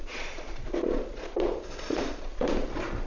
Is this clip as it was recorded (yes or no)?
no